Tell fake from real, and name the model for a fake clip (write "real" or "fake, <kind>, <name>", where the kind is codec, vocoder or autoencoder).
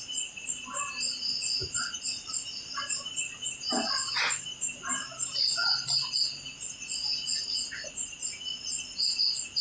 real